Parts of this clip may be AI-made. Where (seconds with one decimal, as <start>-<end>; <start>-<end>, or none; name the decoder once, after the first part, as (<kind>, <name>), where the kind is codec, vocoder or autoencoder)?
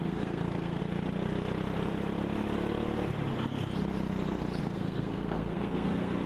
0.0-0.8 (codec, SNAC); 4.6-6.3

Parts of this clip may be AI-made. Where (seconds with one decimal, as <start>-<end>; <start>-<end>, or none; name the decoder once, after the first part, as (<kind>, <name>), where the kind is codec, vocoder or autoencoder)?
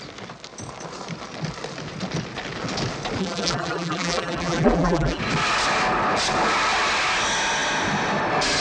3.2-5.2 (vocoder, BigVGAN v2)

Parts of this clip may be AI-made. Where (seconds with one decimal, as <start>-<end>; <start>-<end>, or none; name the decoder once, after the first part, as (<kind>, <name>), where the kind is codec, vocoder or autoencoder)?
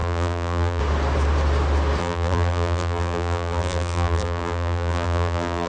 0.0-0.8 (vocoder, BigVGAN v2); 2.0-5.7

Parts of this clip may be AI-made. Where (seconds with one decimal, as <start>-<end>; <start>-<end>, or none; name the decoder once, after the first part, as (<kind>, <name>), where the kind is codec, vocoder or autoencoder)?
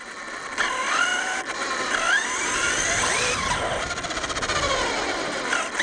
none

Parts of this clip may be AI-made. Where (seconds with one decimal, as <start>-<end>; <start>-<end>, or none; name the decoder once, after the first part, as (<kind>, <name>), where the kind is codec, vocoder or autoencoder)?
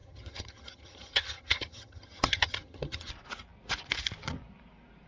0.0-3.1 (vocoder, HiFi-GAN)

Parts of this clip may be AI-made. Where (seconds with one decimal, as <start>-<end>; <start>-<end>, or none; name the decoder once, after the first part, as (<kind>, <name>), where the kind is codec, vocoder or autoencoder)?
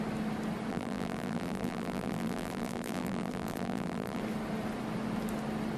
0.7-4.2 (vocoder, BigVGAN v2)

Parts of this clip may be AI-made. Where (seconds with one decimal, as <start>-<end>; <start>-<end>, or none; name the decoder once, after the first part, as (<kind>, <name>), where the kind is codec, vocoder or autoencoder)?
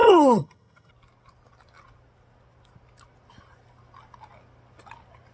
0.0-0.9 (vocoder, HiFi-GAN)